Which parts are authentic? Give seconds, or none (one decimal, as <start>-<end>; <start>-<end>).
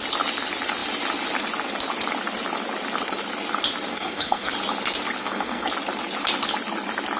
0.0-3.9; 4.5-5.2; 5.7-7.2